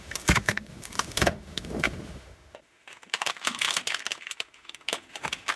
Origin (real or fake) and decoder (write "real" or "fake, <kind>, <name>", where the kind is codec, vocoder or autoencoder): fake, autoencoder, DAC-VAE